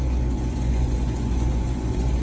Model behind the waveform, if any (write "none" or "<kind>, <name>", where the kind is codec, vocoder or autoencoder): vocoder, Vocos